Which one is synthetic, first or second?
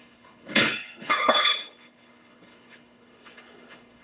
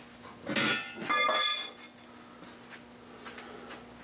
first